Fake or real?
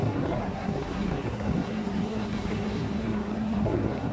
fake